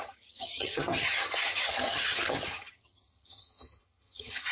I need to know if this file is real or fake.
fake